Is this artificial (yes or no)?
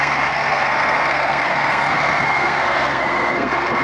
yes